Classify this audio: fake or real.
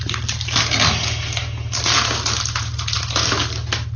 real